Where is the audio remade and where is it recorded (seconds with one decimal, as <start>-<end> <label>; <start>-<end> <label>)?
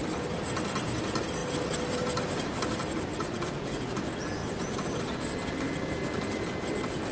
0.0-3.1 recorded; 3.1-3.9 remade; 3.9-7.1 recorded